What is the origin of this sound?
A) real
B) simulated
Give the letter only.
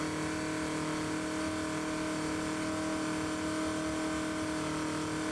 A